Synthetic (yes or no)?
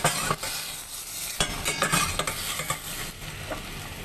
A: no